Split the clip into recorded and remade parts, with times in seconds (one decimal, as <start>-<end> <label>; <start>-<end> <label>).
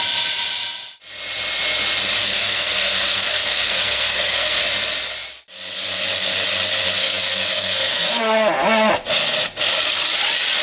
0.0-2.2 recorded; 2.2-4.6 remade; 4.6-7.0 recorded; 7.0-8.1 remade; 8.1-10.6 recorded